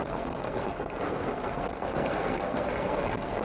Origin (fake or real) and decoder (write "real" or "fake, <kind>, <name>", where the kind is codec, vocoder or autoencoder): fake, codec, SNAC